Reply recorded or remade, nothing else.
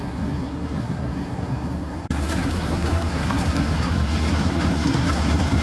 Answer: remade